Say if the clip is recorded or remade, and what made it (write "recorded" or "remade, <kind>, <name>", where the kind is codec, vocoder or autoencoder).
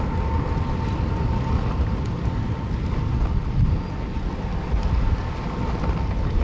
recorded